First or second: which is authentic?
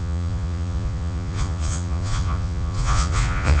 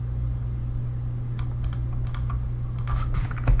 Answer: second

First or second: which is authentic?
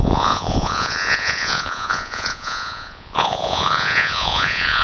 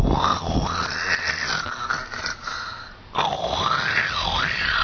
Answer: second